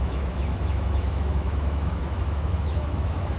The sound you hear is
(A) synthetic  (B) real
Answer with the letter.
A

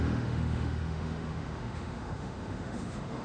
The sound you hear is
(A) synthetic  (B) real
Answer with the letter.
A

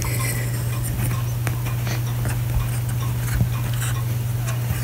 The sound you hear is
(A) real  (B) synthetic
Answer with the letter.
A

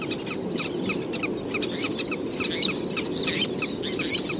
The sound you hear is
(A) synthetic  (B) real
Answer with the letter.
B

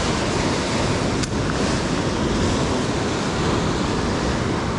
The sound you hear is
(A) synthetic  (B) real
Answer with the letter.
B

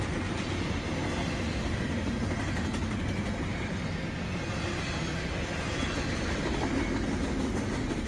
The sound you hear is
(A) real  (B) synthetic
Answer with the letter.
A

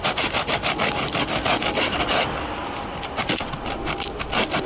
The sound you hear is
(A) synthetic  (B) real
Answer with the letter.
B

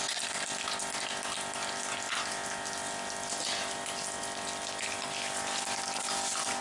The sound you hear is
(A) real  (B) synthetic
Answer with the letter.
A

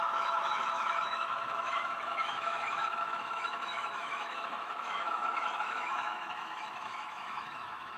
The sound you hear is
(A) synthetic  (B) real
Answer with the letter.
A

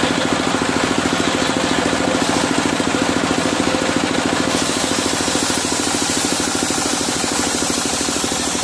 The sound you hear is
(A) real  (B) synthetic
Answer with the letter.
A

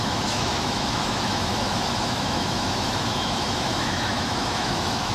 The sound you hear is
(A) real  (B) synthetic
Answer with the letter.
B